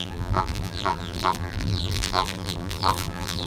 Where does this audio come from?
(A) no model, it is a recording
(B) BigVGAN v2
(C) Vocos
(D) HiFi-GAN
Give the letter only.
B